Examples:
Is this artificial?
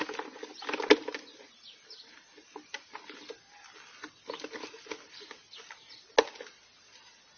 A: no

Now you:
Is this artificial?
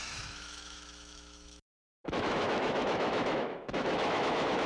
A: yes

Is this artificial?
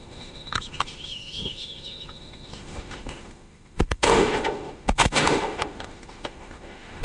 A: yes